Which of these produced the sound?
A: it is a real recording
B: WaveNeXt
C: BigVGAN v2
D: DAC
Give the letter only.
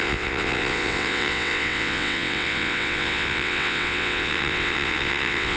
B